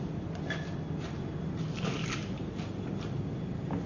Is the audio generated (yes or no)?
no